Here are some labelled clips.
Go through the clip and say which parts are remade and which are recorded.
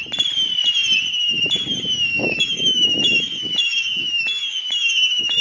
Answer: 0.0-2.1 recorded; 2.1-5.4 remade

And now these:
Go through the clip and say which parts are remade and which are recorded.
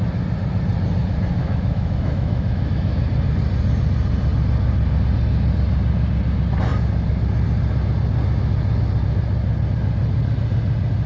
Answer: 0.0-1.4 recorded; 1.4-3.0 remade; 3.0-11.1 recorded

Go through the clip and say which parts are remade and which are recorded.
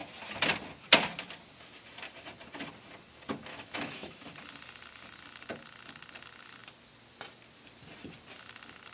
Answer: 0.0-3.5 recorded; 3.5-4.3 remade; 4.3-8.9 recorded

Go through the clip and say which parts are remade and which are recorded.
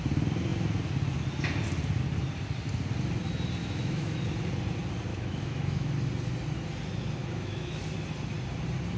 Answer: 0.0-3.6 recorded; 3.6-4.2 remade; 4.2-5.1 recorded; 5.1-5.9 remade; 5.9-7.2 recorded; 7.2-7.8 remade; 7.8-9.0 recorded